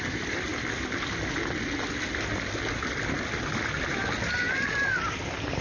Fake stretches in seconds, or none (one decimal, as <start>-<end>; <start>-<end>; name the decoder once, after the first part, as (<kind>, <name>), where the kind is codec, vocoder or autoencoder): none

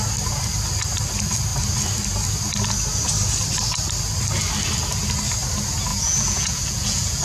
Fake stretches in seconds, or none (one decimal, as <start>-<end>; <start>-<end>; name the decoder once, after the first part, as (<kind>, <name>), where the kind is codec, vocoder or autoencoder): 5.9-7.2 (vocoder, Vocos)

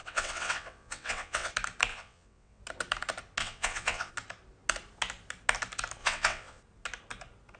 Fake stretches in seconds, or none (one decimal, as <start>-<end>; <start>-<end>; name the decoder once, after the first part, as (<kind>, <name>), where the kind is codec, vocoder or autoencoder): 0.0-1.5 (vocoder, WaveNeXt); 1.9-2.6; 3.4-4.1; 6.0-6.6

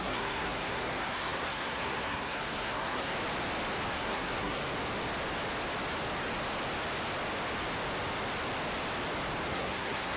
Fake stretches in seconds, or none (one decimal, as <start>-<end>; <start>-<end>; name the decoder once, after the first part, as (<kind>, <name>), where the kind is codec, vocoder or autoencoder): 0.0-3.1 (codec, SNAC); 3.9-4.6; 9.5-10.2